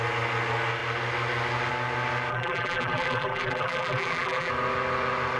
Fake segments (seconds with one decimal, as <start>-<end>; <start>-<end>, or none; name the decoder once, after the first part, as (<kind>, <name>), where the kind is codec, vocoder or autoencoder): 2.3-4.5 (vocoder, BigVGAN v2)